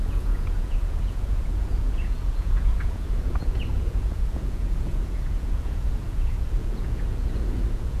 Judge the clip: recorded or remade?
remade